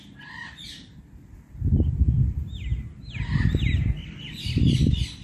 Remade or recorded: recorded